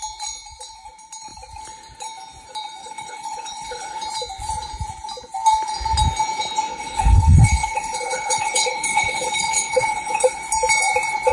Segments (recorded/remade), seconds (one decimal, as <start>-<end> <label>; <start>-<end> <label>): 0.0-2.8 recorded; 2.8-4.0 remade; 4.0-6.7 recorded; 6.7-10.4 remade; 10.4-11.3 recorded